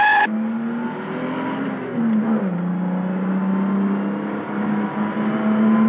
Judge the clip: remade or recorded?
recorded